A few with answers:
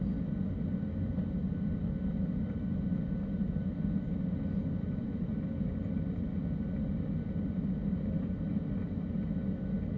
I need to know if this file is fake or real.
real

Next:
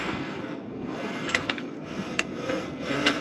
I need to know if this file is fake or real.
fake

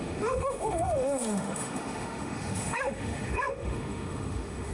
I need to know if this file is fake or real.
fake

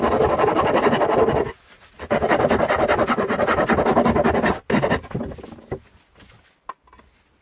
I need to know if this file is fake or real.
real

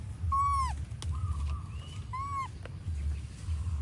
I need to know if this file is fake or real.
real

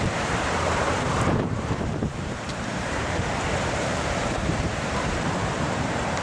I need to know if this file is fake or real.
fake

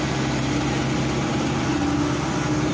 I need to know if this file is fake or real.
real